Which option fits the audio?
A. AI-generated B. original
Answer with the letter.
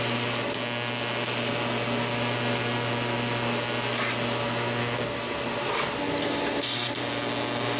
B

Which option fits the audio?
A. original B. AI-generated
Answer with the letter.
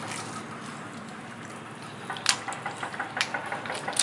A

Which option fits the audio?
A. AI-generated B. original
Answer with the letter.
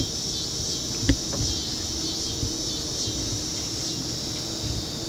B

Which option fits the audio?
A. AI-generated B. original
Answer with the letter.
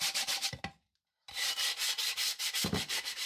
A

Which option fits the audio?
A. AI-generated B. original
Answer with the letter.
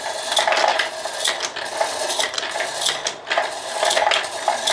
B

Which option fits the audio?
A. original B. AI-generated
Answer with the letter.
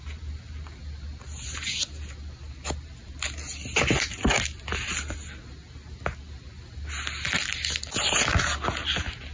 A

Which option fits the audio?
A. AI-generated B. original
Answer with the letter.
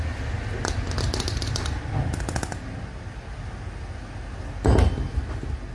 B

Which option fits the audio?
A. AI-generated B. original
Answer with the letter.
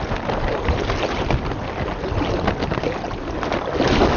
B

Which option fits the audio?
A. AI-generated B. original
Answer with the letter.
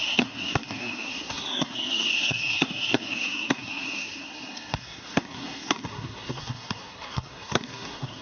A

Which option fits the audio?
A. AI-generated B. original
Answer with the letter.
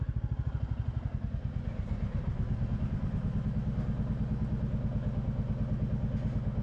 B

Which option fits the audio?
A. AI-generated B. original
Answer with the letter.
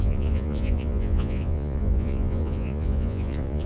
A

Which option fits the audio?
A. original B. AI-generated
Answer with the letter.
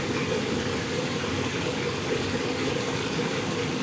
B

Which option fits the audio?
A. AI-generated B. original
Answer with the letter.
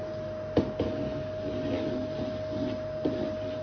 B